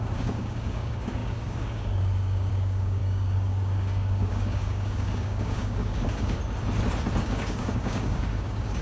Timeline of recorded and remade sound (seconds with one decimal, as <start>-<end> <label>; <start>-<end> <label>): 0.0-6.4 remade; 6.4-7.2 recorded; 7.2-8.8 remade